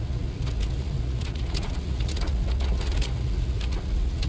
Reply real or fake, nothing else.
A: fake